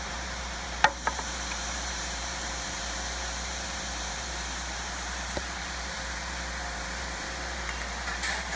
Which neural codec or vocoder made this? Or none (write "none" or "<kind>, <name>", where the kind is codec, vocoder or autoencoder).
vocoder, BigVGAN v2